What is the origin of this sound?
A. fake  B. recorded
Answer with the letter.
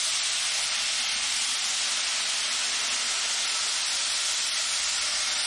B